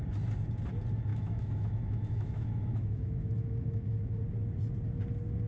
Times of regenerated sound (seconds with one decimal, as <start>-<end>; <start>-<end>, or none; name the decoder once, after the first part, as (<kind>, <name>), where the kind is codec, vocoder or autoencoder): 1.1-4.2 (autoencoder, DAC-VAE)